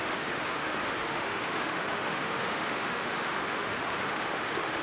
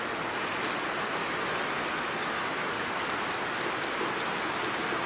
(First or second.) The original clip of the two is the second